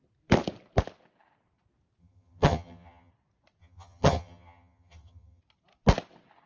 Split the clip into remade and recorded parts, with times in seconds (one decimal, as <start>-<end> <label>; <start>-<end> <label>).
0.0-2.0 recorded; 2.0-3.1 remade; 3.1-3.6 recorded; 3.6-5.4 remade; 5.4-6.5 recorded